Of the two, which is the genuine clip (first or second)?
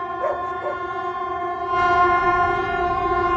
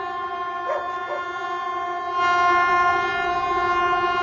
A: second